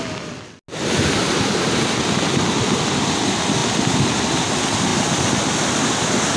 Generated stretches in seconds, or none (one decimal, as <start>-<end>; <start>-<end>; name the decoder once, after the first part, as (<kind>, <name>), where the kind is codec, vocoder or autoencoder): none